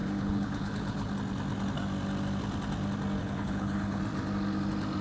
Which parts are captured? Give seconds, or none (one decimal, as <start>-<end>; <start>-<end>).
1.1-3.2; 4.0-5.0